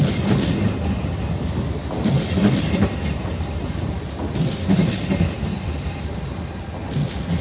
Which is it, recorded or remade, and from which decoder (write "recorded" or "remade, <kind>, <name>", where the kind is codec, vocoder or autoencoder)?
recorded